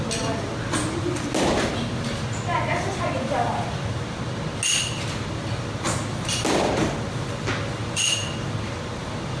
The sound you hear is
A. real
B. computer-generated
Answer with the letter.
A